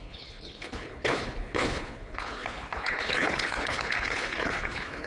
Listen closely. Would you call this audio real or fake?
fake